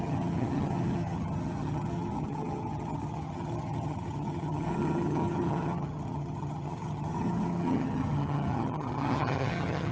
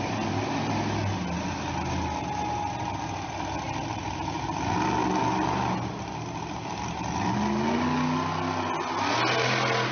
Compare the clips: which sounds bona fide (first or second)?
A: second